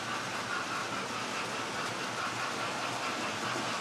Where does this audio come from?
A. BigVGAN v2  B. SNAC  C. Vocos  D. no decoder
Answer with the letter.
D